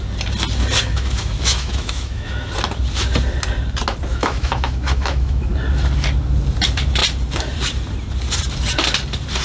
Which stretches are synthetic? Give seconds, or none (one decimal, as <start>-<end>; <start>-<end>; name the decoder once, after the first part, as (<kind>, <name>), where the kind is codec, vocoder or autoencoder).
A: 0.8-2.5 (autoencoder, DAC-VAE); 4.1-5.5

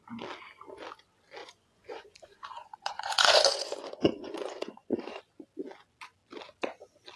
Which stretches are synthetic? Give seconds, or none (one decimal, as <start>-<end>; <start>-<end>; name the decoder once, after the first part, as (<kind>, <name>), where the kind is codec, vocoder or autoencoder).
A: 1.4-5.2 (vocoder, Vocos)

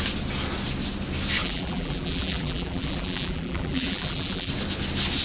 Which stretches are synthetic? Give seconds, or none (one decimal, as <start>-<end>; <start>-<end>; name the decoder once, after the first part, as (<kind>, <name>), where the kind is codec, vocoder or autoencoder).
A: 1.4-4.5 (vocoder, BigVGAN v2)

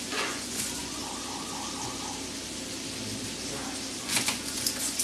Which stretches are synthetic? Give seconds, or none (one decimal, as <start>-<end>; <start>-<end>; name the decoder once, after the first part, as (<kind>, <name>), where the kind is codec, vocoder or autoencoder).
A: 0.0-1.0 (vocoder, Vocos); 4.0-5.0

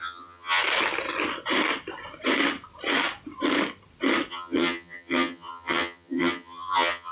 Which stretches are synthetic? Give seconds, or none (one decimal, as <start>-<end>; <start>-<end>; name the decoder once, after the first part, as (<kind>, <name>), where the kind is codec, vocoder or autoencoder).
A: 0.0-0.6 (vocoder, HiFi-GAN); 4.3-7.1

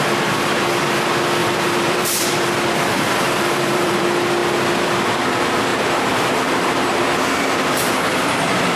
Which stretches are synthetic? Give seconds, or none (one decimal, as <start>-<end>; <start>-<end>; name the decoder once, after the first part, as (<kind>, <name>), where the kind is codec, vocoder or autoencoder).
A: 1.4-4.0 (vocoder, BigVGAN v2); 5.7-6.9

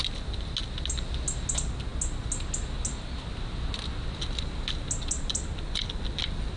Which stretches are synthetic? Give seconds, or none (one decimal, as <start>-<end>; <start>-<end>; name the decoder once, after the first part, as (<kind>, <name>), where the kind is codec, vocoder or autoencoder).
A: none